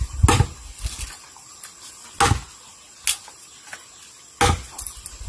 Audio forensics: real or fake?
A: real